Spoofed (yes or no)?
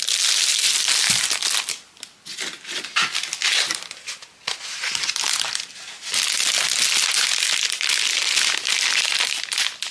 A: no